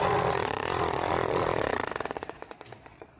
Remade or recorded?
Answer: remade